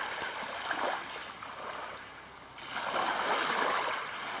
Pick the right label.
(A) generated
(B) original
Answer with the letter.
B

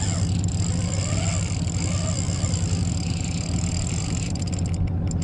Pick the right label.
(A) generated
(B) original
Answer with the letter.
B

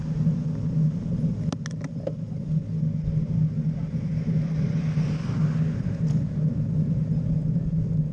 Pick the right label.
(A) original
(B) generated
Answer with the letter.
A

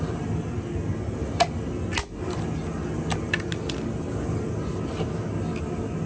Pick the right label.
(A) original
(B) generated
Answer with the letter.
A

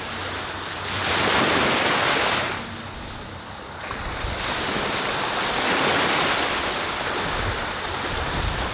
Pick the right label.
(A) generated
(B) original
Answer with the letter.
B